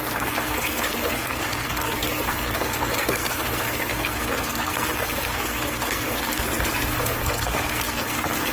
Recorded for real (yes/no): no